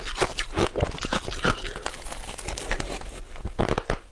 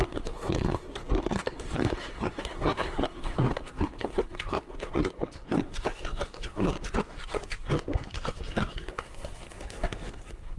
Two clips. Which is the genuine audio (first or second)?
first